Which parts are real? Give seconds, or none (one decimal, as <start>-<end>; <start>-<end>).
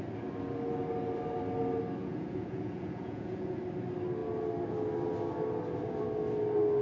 0.0-2.0; 3.6-6.8